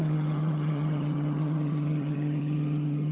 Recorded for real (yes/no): no